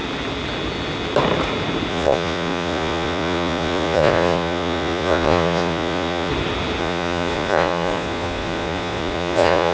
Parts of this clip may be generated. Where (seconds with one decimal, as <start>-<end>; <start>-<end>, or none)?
1.9-6.3; 6.8-9.7